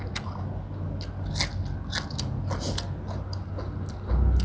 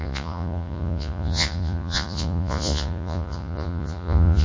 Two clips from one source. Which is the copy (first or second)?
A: second